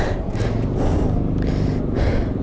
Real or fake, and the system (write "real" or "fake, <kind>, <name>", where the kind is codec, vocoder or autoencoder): real